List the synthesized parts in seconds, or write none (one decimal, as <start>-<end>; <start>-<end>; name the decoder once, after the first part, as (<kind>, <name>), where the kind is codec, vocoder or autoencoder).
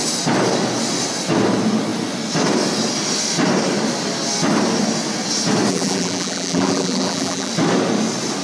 5.7-7.5 (vocoder, BigVGAN v2)